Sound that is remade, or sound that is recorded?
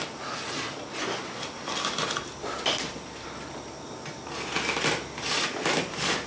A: recorded